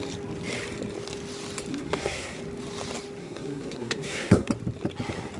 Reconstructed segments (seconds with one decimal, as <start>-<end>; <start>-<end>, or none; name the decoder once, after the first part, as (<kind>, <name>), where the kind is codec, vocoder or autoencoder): 1.7-2.4 (codec, SNAC); 3.2-4.5